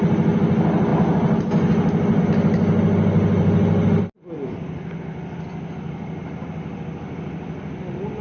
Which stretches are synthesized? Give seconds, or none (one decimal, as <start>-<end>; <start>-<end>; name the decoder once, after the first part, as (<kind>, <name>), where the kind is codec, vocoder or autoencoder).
none